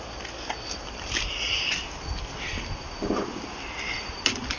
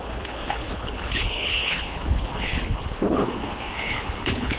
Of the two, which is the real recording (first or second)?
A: first